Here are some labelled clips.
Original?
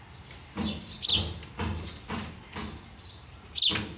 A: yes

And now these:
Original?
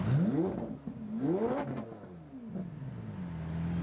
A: yes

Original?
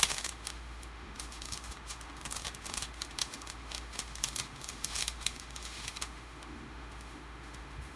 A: no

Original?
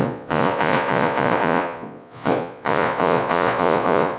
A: no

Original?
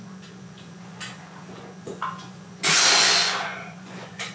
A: no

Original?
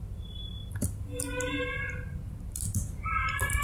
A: yes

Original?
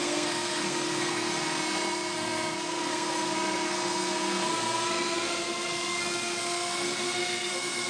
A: no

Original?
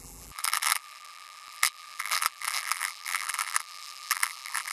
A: no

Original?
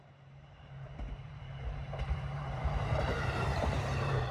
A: no